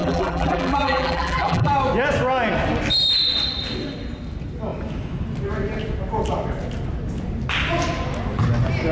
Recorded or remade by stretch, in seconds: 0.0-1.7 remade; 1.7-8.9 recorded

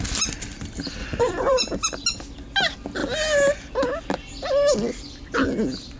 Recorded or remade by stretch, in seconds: 0.0-1.0 recorded; 1.0-1.6 remade; 1.6-6.0 recorded